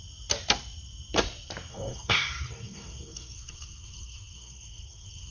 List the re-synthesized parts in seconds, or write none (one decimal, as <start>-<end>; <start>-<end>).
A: 1.7-5.3